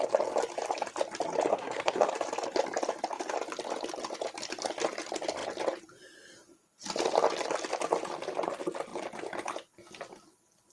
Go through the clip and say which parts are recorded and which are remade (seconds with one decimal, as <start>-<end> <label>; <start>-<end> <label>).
0.0-1.5 recorded; 1.5-2.1 remade; 2.1-10.7 recorded